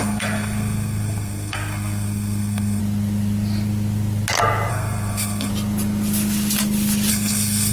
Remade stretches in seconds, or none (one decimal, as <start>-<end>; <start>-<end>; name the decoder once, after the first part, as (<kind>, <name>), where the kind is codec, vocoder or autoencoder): 0.0-2.8 (codec, SNAC); 4.7-5.5; 7.1-7.7